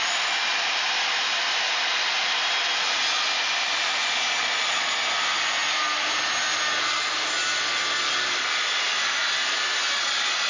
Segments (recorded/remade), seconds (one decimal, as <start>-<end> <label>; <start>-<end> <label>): 0.0-4.4 recorded; 4.4-4.9 remade; 4.9-10.5 recorded